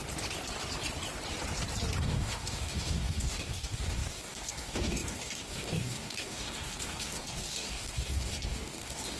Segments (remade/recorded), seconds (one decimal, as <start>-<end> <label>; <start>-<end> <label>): 0.0-2.0 recorded; 2.0-9.2 remade